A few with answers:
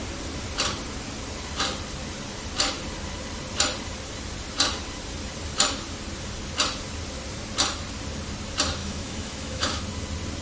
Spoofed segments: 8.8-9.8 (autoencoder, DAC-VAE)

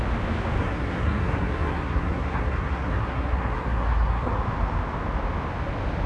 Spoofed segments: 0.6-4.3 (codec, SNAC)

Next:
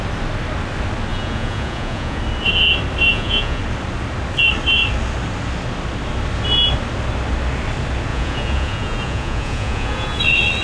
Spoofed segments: 1.1-2.2 (vocoder, Vocos); 3.1-3.6; 8.1-10.2

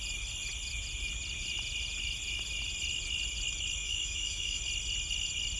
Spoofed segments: 3.8-4.6 (autoencoder, DAC-VAE)

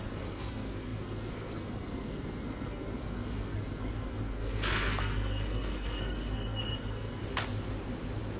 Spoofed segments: 0.0-7.2 (codec, SNAC)

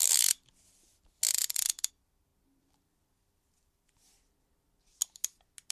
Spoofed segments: none